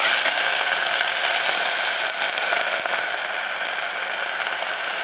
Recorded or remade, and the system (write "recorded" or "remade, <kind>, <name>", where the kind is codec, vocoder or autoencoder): recorded